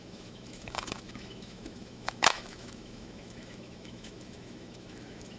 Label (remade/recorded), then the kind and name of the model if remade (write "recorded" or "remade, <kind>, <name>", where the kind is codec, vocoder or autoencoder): remade, autoencoder, DAC-VAE